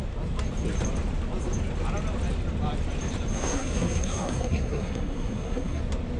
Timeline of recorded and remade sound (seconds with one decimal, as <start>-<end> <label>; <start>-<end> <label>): 0.0-3.3 recorded; 3.3-5.8 remade; 5.8-6.2 recorded